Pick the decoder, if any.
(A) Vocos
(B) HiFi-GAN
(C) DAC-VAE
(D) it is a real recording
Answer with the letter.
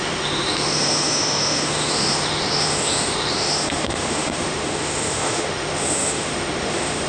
C